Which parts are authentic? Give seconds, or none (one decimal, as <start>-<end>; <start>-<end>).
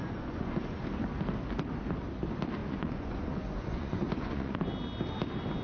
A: 0.8-2.6; 4.7-5.6